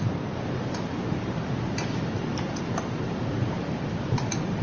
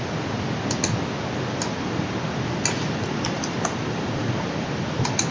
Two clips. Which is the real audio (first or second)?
second